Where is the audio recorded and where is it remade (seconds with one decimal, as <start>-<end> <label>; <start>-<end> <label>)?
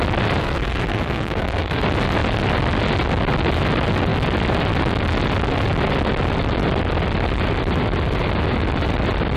0.0-0.4 recorded; 0.4-1.8 remade; 1.8-9.4 recorded